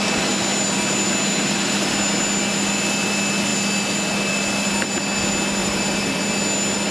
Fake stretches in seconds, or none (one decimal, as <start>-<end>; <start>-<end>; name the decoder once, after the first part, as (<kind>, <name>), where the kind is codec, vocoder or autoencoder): 5.6-6.2 (vocoder, BigVGAN v2)